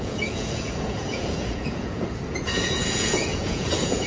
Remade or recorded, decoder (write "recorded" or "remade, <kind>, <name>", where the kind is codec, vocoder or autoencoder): remade, vocoder, Vocos